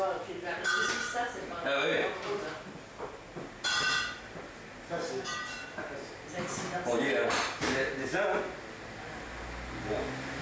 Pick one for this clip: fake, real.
real